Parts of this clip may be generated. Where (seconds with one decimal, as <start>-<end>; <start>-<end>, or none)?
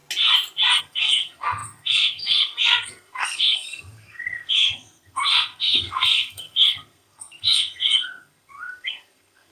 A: 0.8-9.5